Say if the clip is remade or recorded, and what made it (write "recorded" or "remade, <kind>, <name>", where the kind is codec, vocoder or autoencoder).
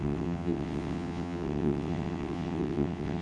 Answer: remade, vocoder, WaveNeXt